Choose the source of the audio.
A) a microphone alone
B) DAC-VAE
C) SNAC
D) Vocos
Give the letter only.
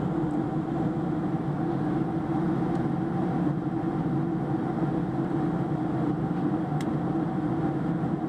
A